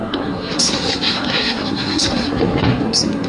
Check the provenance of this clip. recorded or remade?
remade